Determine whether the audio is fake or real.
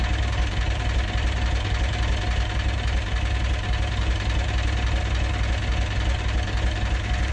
real